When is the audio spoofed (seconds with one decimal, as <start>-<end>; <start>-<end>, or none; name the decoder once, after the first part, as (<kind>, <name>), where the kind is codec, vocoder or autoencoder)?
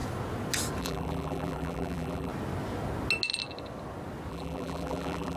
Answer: 0.8-2.3 (vocoder, BigVGAN v2); 4.3-5.4